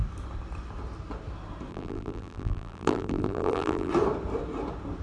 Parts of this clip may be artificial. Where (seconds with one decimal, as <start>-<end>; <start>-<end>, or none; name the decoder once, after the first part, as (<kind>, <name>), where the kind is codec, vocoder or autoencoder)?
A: 1.7-3.9 (vocoder, BigVGAN v2)